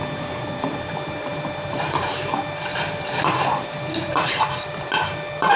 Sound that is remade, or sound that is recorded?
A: remade